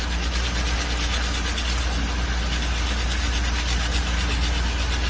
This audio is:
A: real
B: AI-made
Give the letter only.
A